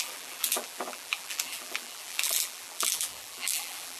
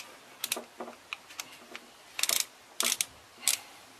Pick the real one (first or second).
second